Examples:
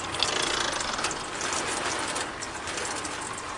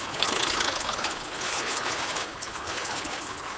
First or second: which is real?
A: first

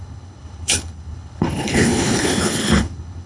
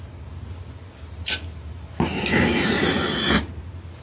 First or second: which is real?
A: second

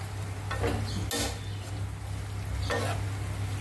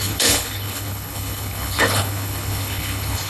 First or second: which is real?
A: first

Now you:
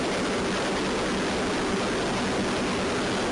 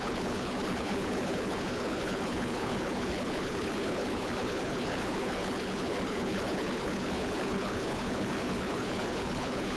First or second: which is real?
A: first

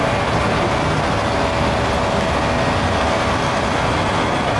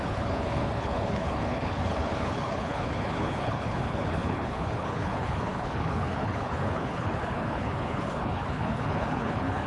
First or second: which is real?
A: first